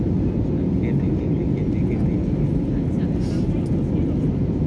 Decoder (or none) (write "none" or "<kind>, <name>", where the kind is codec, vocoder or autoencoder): none